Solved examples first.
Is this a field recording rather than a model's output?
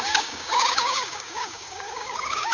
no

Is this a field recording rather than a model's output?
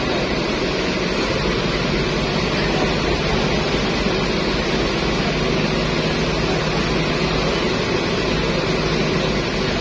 yes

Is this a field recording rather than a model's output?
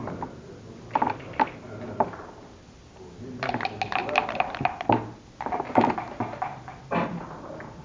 yes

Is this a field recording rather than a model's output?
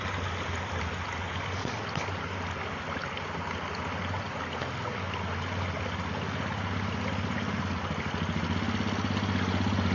yes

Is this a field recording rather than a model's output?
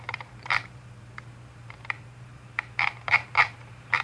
no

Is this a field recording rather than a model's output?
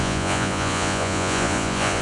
no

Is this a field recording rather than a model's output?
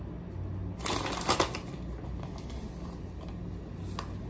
yes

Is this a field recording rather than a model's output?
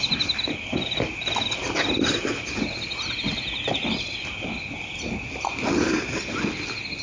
yes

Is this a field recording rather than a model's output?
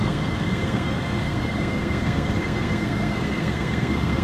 no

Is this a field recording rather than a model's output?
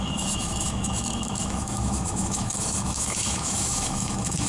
no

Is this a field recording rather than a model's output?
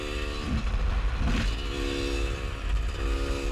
yes